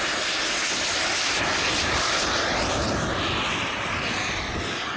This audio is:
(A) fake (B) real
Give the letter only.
B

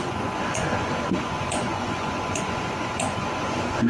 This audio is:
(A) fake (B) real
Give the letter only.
A